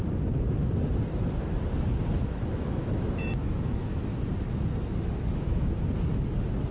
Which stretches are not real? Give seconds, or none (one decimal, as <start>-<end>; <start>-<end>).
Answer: 2.2-4.1; 5.3-5.7